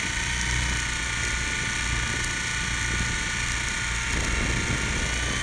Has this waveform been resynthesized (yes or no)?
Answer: no